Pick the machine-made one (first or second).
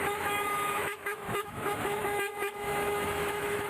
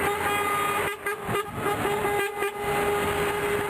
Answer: first